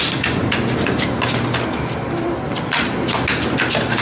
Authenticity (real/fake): real